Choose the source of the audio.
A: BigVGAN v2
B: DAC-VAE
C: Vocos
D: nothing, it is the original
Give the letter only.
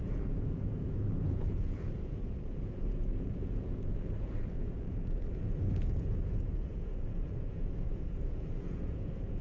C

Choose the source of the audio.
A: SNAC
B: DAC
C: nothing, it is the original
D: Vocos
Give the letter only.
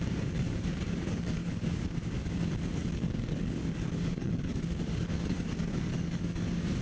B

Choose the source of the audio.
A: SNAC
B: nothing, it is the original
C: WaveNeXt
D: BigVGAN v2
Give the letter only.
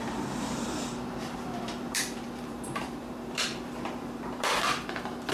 D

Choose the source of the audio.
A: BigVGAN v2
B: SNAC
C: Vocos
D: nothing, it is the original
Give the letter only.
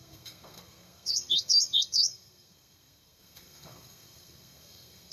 B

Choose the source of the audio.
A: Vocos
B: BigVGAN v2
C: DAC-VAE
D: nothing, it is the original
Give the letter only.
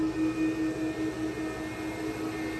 D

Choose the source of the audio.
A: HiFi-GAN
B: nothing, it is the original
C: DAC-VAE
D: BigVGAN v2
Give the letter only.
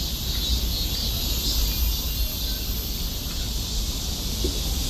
B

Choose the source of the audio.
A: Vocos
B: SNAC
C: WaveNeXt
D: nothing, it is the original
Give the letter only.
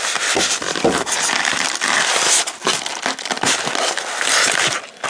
D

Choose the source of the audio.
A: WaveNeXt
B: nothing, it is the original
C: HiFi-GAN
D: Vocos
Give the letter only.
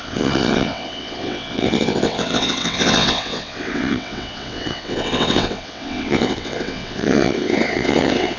A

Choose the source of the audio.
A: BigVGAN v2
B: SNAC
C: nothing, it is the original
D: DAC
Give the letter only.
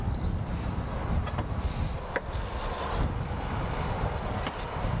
C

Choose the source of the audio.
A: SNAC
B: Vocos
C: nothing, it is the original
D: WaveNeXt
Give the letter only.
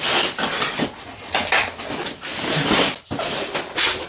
C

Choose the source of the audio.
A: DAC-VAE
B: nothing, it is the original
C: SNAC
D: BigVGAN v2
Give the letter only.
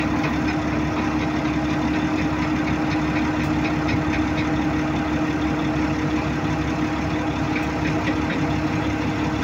B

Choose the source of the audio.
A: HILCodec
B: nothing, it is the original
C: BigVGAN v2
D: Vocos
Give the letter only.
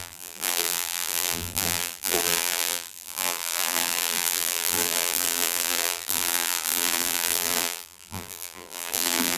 C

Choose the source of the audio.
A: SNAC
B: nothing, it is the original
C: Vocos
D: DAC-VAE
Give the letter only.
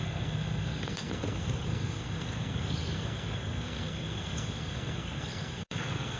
A